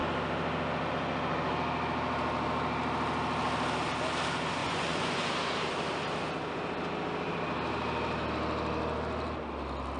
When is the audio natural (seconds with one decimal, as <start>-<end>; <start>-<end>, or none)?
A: 0.0-4.6; 5.3-10.0